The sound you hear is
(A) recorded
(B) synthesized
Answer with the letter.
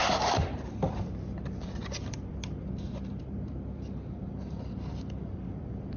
B